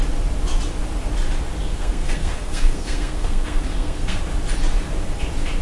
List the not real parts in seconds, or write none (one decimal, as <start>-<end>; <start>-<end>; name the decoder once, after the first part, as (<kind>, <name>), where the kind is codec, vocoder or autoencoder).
1.7-4.2 (codec, SNAC)